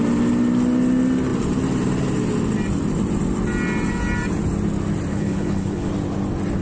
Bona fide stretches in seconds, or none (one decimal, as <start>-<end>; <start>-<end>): 0.0-5.1; 5.9-6.6